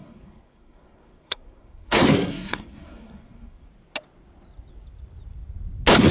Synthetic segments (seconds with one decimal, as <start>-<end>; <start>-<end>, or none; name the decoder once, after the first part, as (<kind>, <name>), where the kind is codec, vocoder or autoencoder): 0.0-3.7 (codec, SNAC)